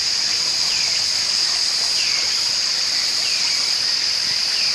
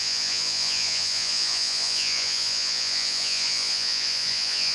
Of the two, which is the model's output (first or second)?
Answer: second